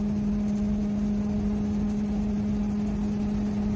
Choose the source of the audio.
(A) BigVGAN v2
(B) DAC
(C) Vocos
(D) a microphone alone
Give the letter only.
D